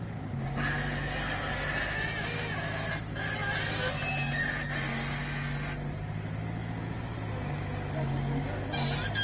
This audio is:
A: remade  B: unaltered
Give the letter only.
B